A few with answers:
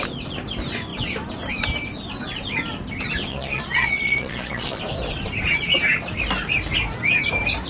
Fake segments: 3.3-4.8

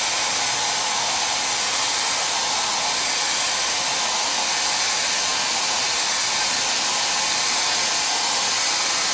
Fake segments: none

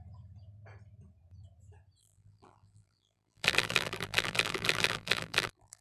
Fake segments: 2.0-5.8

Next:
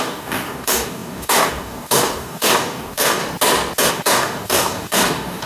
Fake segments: 0.0-3.2; 3.9-5.5

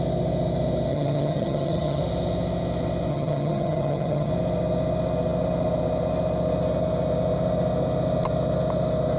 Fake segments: 0.9-2.0; 3.1-4.3

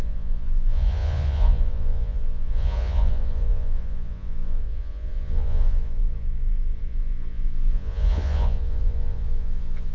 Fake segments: 0.0-9.9